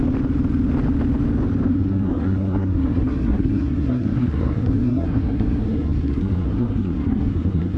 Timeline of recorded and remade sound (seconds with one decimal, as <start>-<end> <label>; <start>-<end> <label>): 0.0-1.7 recorded; 1.7-7.8 remade